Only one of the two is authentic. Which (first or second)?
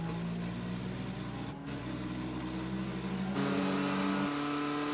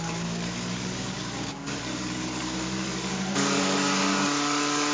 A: first